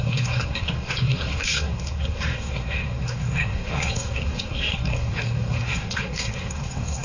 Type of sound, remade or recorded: remade